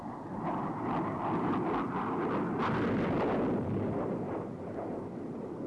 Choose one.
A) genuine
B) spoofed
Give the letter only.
A